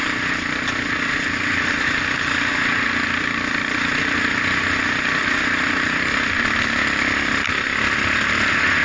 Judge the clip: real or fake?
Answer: real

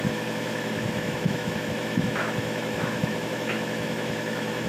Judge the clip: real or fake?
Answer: fake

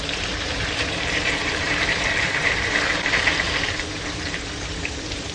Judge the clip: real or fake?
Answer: fake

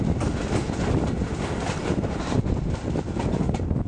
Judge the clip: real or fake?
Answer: real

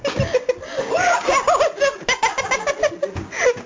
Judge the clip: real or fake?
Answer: real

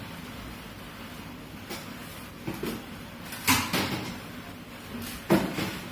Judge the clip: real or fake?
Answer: real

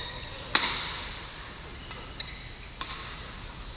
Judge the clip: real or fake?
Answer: real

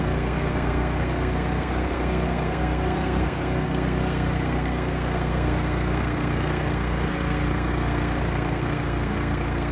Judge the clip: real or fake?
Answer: fake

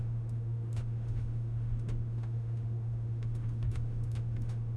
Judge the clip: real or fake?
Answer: fake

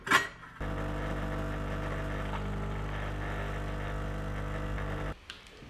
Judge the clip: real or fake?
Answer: real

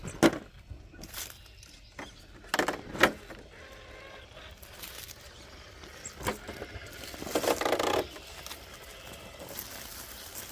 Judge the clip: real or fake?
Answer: real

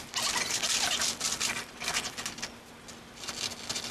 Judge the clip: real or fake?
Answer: real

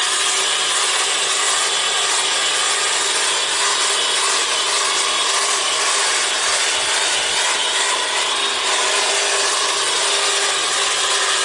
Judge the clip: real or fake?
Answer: real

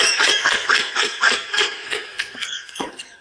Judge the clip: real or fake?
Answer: fake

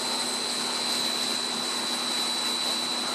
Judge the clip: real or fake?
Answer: real